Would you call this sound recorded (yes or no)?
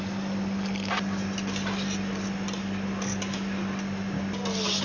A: yes